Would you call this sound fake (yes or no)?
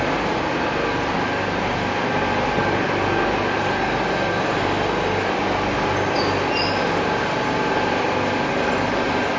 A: no